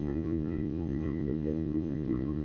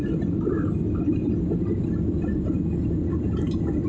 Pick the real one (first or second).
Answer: second